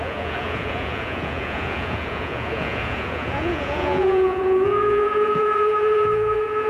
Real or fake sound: fake